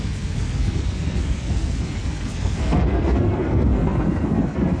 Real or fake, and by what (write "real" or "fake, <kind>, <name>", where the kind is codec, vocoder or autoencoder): fake, codec, SNAC